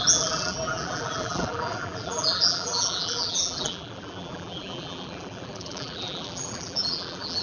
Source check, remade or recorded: remade